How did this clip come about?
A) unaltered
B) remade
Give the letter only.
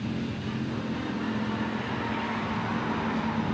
A